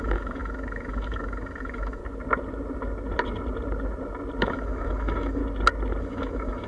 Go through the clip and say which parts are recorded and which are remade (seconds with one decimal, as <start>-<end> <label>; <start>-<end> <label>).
0.0-2.0 remade; 2.0-4.4 recorded; 4.4-5.4 remade; 5.4-6.0 recorded; 6.0-6.7 remade

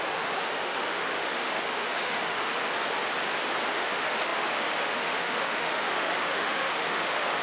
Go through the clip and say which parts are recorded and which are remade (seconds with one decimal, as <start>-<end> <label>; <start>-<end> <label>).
0.0-2.6 remade; 2.6-3.7 recorded; 3.7-7.4 remade

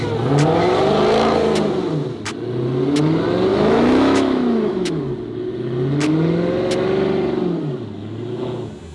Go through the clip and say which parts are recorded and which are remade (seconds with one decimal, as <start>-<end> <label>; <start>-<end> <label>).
0.0-3.5 recorded; 3.5-5.0 remade; 5.0-8.9 recorded

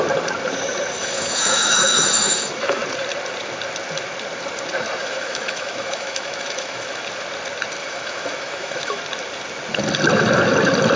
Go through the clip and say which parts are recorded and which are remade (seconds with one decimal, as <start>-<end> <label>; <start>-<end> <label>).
0.0-1.0 recorded; 1.0-2.8 remade; 2.8-5.0 recorded; 5.0-7.0 remade; 7.0-7.8 recorded; 7.8-9.0 remade; 9.0-11.0 recorded

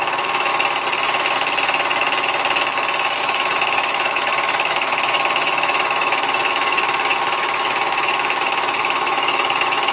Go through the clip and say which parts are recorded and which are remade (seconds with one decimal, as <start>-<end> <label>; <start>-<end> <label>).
0.0-0.5 remade; 0.5-3.2 recorded; 3.2-9.9 remade